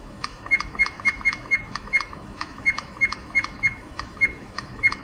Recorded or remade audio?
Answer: remade